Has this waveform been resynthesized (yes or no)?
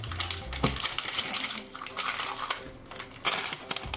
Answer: no